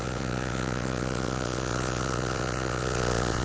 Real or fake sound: fake